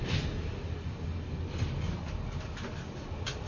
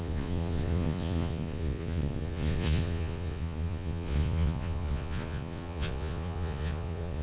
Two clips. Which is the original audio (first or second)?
first